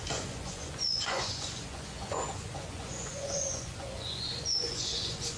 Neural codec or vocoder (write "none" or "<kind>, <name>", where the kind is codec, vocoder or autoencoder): vocoder, Vocos